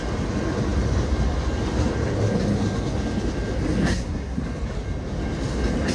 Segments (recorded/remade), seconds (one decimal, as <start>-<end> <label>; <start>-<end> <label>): 0.0-3.8 recorded; 3.8-4.4 remade; 4.4-5.9 recorded